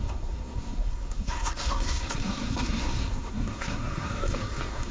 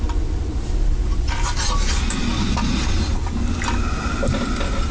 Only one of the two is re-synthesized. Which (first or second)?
first